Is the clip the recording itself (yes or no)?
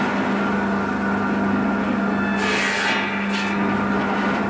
yes